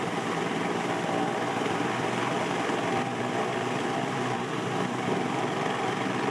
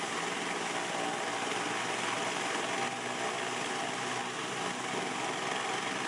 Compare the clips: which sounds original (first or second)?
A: second